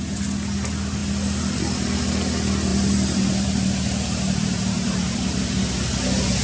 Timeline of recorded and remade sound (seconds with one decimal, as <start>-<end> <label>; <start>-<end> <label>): 0.0-2.7 recorded; 2.7-5.5 remade; 5.5-6.4 recorded